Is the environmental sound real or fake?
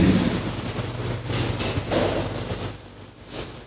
real